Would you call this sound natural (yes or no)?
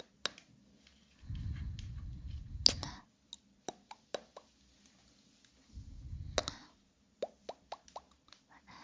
yes